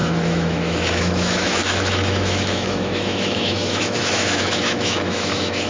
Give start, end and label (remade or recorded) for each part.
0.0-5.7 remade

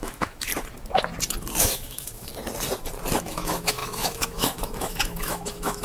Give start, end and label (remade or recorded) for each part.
0.0-0.5 remade; 0.5-1.6 recorded; 1.6-2.3 remade; 2.3-3.2 recorded; 3.2-5.8 remade

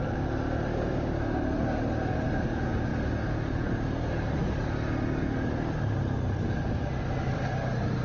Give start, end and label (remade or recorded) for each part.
0.0-0.7 recorded; 0.7-1.2 remade; 1.2-8.0 recorded